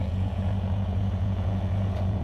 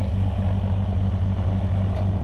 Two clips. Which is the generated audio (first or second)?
first